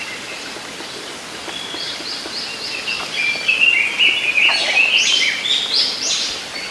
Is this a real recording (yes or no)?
yes